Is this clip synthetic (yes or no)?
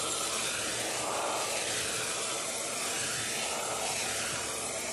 no